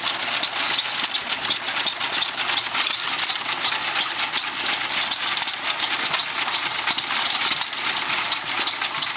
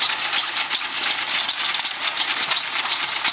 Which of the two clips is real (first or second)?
second